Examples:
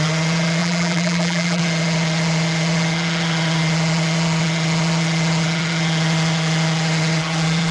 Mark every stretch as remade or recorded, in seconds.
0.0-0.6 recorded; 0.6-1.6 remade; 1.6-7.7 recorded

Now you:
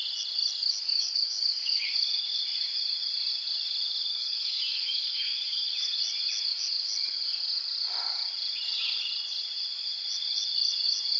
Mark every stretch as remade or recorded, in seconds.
0.0-0.9 recorded; 0.9-2.4 remade; 2.4-4.1 recorded; 4.1-6.0 remade; 6.0-11.2 recorded

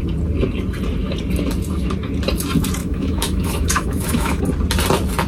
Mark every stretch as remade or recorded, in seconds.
0.0-2.8 recorded; 2.8-4.4 remade; 4.4-5.3 recorded

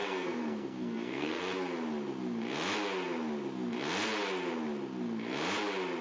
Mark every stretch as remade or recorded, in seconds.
0.0-1.4 remade; 1.4-6.0 recorded

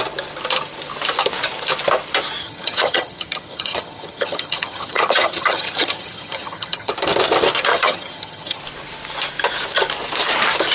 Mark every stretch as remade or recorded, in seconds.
0.0-2.4 recorded; 2.4-6.9 remade; 6.9-7.7 recorded; 7.7-8.6 remade; 8.6-10.7 recorded

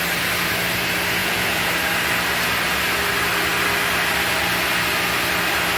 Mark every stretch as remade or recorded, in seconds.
0.0-1.2 recorded; 1.2-1.7 remade; 1.7-5.8 recorded

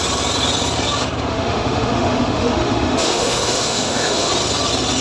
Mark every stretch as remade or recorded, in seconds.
0.0-1.3 recorded; 1.3-4.3 remade; 4.3-5.0 recorded

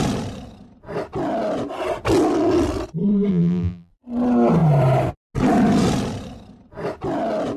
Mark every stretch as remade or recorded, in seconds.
0.0-3.3 recorded; 3.3-3.9 remade; 3.9-7.6 recorded